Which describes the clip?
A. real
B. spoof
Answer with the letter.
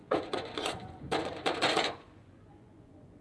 B